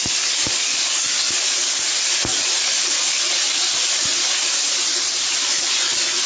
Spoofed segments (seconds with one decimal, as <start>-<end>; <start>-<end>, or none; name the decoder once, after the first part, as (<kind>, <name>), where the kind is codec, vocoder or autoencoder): 2.3-5.3 (vocoder, BigVGAN v2)